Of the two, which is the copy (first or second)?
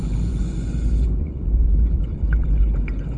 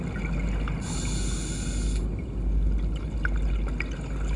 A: first